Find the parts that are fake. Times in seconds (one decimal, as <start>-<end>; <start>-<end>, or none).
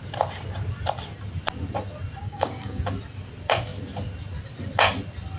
2.2-2.9